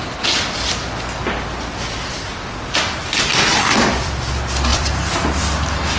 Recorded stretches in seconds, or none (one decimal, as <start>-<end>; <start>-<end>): 0.0-1.2; 2.8-3.5; 4.3-4.7; 5.3-6.0